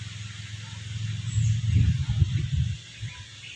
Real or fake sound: real